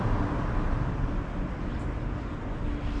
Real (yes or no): yes